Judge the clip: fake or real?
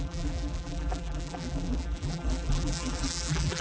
fake